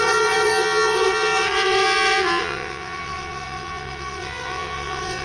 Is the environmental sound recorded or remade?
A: remade